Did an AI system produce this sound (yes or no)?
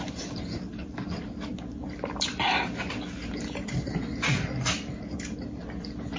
no